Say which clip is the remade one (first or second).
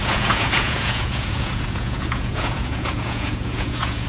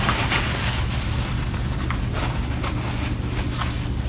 first